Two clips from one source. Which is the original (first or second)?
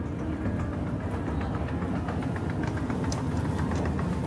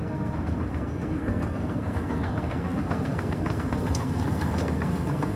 first